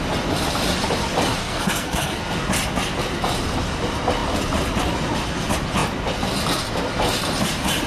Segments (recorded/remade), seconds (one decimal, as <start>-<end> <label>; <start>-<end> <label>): 0.0-1.4 recorded; 1.4-2.2 remade; 2.2-7.9 recorded